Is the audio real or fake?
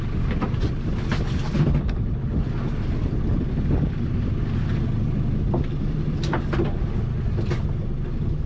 real